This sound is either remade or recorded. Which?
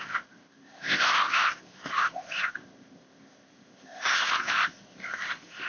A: remade